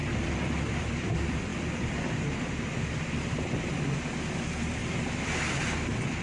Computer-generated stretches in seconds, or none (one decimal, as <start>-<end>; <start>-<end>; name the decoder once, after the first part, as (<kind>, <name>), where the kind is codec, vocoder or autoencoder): 0.0-6.2 (vocoder, BigVGAN v2)